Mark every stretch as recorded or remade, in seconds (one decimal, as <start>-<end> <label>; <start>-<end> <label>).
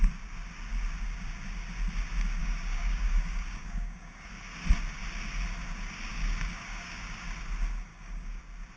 0.0-2.4 recorded; 2.4-4.3 remade; 4.3-6.1 recorded; 6.1-7.0 remade; 7.0-7.9 recorded; 7.9-8.4 remade; 8.4-8.8 recorded